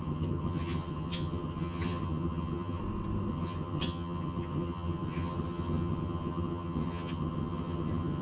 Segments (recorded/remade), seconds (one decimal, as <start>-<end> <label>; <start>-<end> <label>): 0.0-2.8 remade; 2.8-3.3 recorded; 3.3-8.2 remade